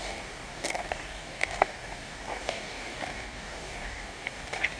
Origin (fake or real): fake